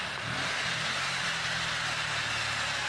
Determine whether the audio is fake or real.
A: real